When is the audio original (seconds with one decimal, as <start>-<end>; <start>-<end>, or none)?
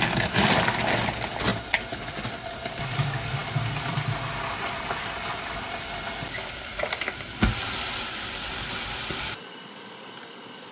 0.0-10.7